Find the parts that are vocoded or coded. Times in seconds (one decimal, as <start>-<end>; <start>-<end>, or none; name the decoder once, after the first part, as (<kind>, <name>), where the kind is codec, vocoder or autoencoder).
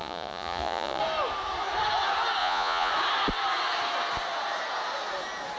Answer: 0.0-1.0 (vocoder, Vocos); 2.4-2.9